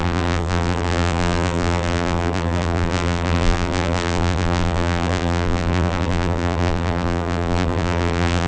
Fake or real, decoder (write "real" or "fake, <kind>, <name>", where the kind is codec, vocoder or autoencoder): fake, vocoder, BigVGAN v2